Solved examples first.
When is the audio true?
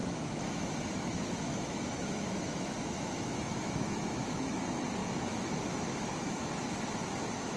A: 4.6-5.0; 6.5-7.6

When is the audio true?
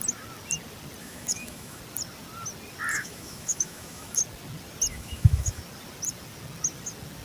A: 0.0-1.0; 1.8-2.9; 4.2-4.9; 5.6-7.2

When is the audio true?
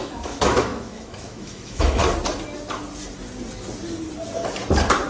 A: 2.0-5.1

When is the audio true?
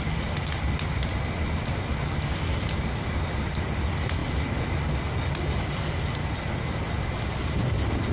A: 0.0-8.1